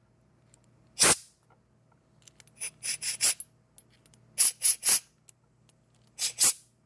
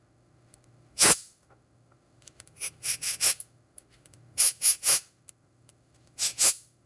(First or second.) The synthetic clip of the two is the second